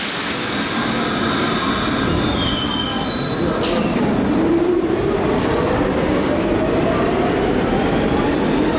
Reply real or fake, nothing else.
real